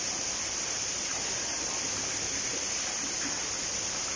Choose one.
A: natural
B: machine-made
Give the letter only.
A